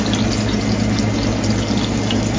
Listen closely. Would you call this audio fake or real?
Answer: real